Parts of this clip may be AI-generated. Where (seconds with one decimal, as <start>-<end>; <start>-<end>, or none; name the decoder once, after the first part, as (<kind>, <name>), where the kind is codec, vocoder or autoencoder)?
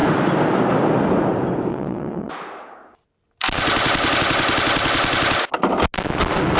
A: 1.7-2.3 (vocoder, WaveNeXt)